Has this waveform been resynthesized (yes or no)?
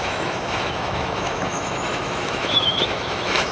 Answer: yes